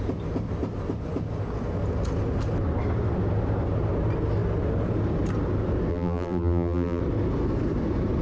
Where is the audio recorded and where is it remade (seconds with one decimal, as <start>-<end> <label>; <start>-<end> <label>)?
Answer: 0.0-5.9 recorded; 5.9-7.0 remade; 7.0-8.2 recorded